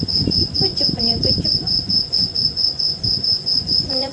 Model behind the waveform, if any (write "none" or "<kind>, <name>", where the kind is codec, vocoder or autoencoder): vocoder, Vocos